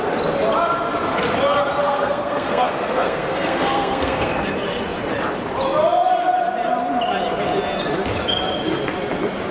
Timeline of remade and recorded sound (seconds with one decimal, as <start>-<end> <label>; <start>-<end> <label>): 0.0-1.8 recorded; 1.8-4.3 remade; 4.3-9.5 recorded